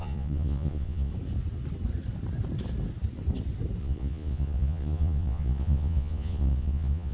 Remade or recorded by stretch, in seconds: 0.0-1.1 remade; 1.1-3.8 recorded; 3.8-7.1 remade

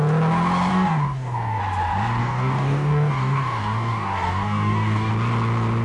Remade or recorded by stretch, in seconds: 0.0-0.7 recorded; 0.7-1.6 remade; 1.6-2.2 recorded; 2.2-5.1 remade; 5.1-5.8 recorded

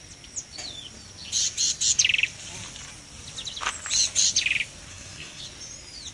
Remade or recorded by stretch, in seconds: 0.0-4.9 recorded; 4.9-5.4 remade; 5.4-6.1 recorded